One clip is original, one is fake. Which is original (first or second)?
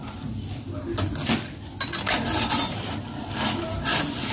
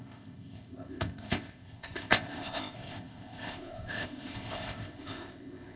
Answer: first